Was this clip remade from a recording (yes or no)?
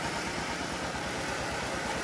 no